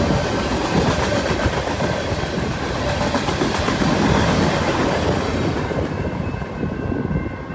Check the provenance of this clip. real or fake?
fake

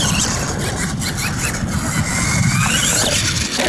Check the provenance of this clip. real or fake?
real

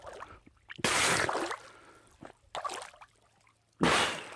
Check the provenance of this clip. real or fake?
real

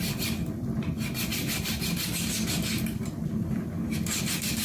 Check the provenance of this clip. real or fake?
real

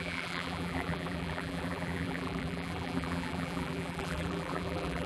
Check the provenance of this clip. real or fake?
fake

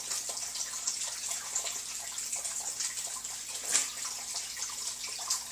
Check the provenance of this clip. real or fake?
real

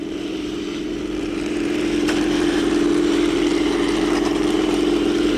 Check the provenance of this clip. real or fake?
fake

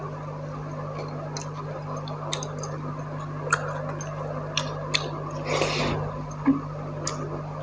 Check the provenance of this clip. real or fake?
real